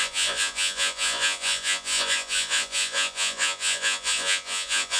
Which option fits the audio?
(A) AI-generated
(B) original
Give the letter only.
A